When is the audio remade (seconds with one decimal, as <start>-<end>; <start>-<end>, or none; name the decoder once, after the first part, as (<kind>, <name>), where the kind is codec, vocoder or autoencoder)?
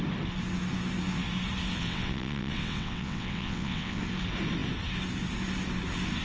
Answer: 1.7-4.0 (vocoder, WaveNeXt)